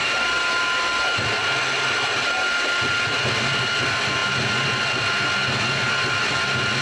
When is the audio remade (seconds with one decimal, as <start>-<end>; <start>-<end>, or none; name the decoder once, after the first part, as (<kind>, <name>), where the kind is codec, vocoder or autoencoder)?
none